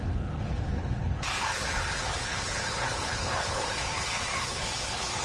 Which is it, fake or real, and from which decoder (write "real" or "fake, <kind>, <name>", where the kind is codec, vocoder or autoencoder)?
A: fake, codec, HILCodec